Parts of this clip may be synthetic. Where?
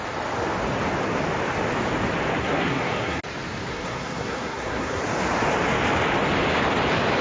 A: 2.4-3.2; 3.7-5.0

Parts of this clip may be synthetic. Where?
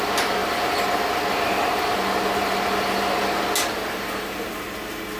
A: none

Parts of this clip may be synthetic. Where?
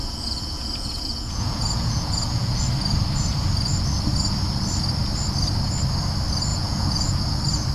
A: 0.0-2.6; 6.5-7.2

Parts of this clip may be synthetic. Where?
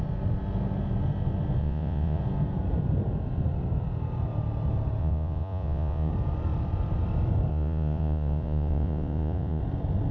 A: 1.6-2.2; 5.0-6.1; 7.5-9.6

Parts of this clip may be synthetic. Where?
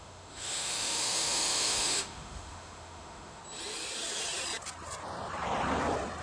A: 0.0-3.4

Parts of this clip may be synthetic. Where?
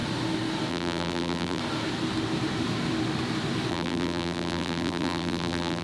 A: 0.7-1.6; 3.7-5.8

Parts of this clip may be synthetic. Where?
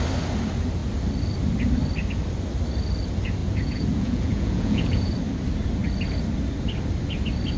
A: 3.4-5.1